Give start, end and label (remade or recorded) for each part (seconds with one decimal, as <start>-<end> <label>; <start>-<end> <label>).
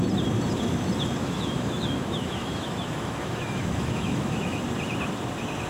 0.0-1.2 recorded; 1.2-4.6 remade; 4.6-5.7 recorded